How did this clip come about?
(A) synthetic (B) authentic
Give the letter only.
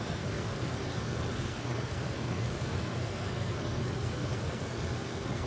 A